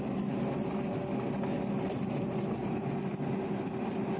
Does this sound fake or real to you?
real